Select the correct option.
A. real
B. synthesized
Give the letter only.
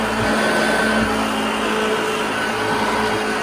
A